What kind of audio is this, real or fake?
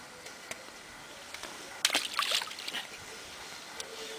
real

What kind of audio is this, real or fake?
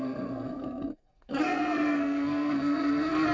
fake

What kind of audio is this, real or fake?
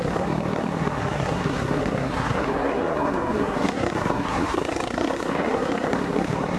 fake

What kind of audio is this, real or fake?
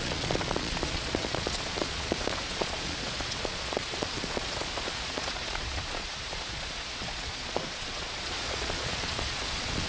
fake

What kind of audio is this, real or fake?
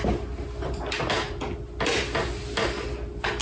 real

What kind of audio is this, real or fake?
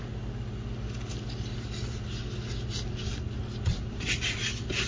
real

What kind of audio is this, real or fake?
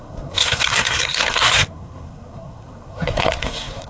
fake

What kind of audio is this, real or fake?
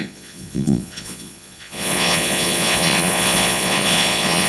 fake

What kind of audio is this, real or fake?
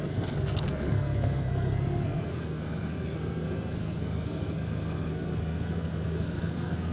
fake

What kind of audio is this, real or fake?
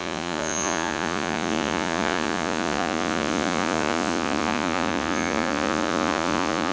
fake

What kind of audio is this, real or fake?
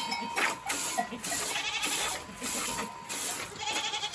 real